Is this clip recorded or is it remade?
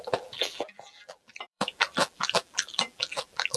remade